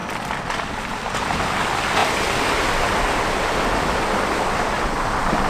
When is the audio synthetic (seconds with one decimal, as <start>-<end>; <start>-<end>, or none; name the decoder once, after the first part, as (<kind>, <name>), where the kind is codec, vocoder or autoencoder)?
0.0-1.1 (vocoder, BigVGAN v2)

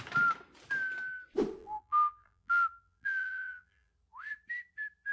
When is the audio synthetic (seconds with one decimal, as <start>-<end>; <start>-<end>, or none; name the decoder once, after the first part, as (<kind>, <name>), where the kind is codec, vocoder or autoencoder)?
1.6-3.9 (vocoder, BigVGAN v2)

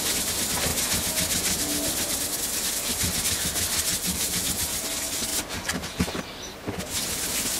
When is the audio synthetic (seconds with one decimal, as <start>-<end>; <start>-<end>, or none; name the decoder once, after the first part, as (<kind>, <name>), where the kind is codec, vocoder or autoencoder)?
3.9-4.5 (vocoder, BigVGAN v2); 5.3-6.2

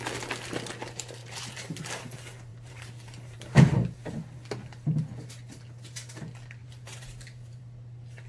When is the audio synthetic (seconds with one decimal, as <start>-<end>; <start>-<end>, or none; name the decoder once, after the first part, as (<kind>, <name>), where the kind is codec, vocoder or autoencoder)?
1.2-2.0 (vocoder, BigVGAN v2); 2.5-4.1; 6.6-7.6

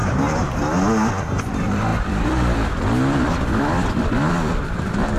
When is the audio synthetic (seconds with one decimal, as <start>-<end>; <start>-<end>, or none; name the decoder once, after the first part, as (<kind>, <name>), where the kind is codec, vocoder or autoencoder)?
1.2-5.2 (vocoder, BigVGAN v2)

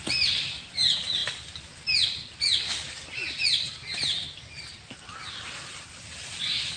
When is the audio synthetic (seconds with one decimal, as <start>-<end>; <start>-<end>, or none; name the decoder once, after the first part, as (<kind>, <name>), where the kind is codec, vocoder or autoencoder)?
none

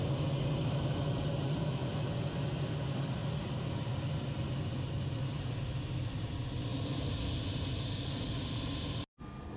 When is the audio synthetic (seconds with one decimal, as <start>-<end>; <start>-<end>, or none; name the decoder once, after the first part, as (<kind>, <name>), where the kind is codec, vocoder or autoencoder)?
none

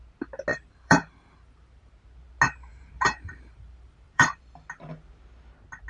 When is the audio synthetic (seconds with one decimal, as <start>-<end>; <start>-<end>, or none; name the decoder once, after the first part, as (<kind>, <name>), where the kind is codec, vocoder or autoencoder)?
0.5-1.9 (vocoder, BigVGAN v2); 2.7-4.4